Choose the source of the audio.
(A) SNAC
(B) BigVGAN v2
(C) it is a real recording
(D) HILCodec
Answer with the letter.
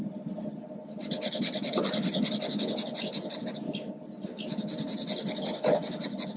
C